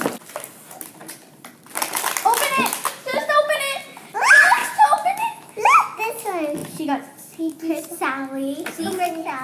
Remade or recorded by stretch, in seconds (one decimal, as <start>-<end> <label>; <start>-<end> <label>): 0.0-4.6 recorded; 4.6-6.0 remade; 6.0-9.4 recorded